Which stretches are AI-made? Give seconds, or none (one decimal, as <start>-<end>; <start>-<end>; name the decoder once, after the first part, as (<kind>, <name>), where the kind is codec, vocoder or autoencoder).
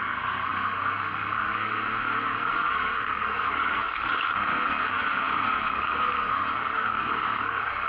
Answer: 0.0-7.9 (codec, SNAC)